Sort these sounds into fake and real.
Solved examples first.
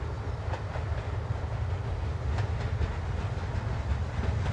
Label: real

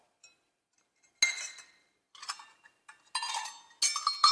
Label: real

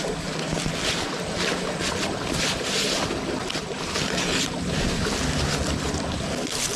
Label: real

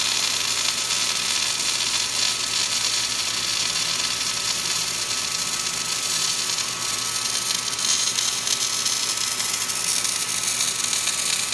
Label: real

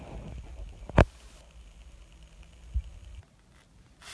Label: real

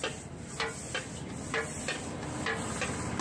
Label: real